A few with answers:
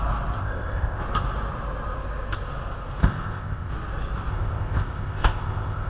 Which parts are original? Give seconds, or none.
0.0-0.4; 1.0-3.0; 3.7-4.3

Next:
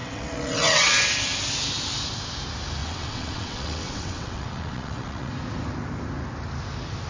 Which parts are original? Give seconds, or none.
0.9-2.8; 5.3-7.1

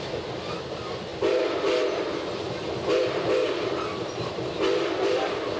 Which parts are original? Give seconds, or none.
none

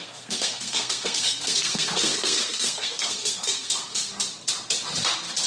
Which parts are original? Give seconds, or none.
4.1-5.5

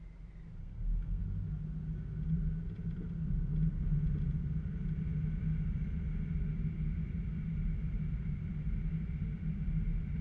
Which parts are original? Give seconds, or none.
0.0-0.6; 1.2-10.2